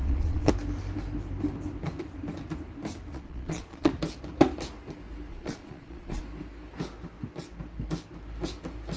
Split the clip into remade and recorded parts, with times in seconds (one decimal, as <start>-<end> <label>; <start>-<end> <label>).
0.0-0.5 remade; 0.5-3.1 recorded; 3.1-3.9 remade; 3.9-5.3 recorded; 5.3-6.2 remade; 6.2-9.0 recorded